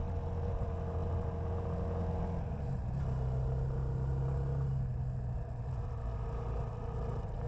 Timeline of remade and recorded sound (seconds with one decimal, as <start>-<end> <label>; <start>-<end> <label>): 0.0-7.5 recorded